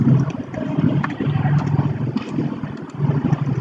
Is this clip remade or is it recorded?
recorded